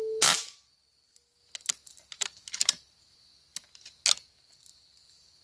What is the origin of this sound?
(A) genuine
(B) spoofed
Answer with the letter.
A